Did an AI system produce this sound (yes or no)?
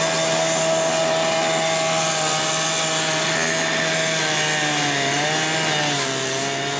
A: no